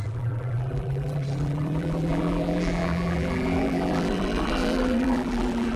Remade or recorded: remade